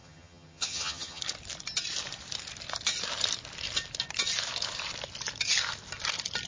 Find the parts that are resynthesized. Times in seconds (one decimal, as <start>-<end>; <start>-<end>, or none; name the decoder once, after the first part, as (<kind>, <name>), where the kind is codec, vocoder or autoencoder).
0.0-1.2 (vocoder, HiFi-GAN)